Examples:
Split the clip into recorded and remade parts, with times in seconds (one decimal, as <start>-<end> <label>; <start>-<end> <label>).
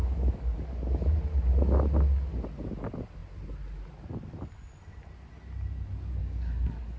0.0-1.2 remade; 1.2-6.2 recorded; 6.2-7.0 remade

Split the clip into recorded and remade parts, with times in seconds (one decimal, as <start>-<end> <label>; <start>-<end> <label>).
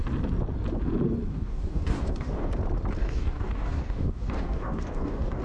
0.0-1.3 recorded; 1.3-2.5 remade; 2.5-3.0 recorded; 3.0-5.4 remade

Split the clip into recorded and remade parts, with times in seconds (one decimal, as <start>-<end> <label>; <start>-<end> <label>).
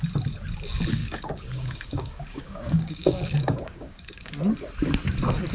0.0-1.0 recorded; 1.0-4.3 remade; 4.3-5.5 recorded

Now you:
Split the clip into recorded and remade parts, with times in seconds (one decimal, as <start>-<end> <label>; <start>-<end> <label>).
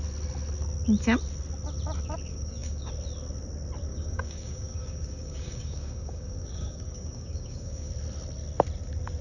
0.0-2.3 recorded; 2.3-2.9 remade; 2.9-3.9 recorded; 3.9-7.9 remade; 7.9-9.2 recorded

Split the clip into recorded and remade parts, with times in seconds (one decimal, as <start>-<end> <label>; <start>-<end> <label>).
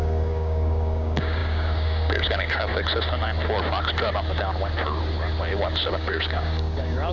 0.0-2.7 remade; 2.7-5.9 recorded; 5.9-7.1 remade